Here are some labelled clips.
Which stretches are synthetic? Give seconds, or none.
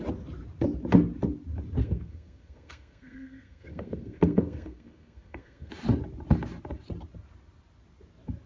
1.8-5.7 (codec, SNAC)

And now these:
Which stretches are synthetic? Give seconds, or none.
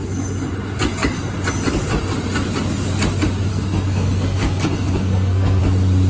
3.5-5.6 (codec, SNAC)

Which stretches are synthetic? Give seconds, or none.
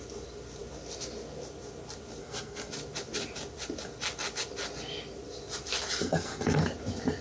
2.2-2.7 (codec, SNAC); 6.0-6.6